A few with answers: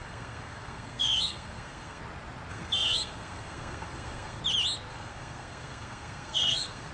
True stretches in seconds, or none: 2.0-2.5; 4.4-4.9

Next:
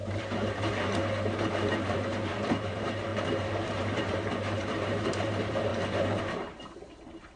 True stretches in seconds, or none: 1.0-1.7